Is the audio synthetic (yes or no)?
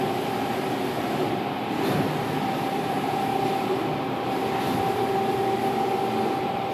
no